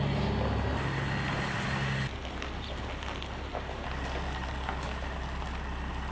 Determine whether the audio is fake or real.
real